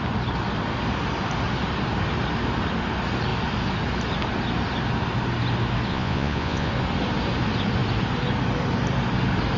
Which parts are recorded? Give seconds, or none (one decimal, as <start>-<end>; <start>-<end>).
0.0-5.9; 6.7-9.6